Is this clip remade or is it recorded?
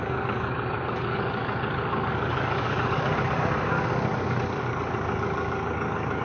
remade